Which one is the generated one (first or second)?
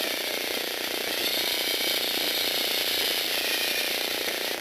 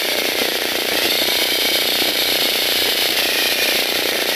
second